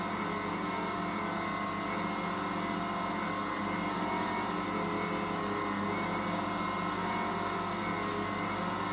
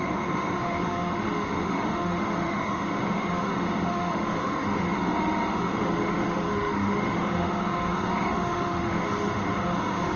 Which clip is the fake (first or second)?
second